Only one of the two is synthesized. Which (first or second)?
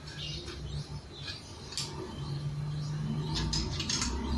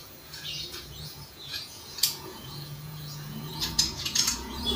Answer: second